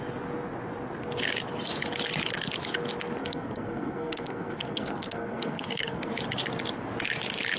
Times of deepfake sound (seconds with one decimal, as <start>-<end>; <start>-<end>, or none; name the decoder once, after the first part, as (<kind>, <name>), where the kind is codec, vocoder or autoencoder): 3.2-6.1 (codec, SNAC)